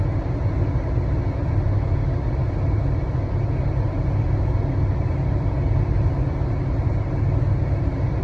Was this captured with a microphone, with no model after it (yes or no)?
yes